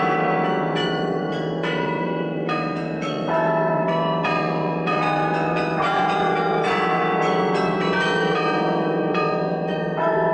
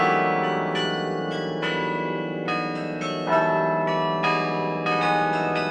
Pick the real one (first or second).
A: second